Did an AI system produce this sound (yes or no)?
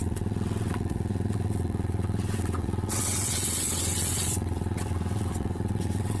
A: yes